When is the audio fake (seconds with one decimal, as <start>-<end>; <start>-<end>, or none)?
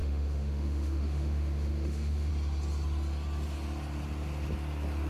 0.0-2.3